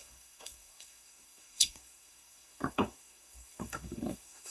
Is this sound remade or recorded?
remade